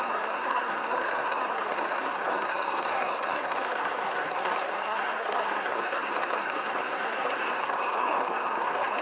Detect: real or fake fake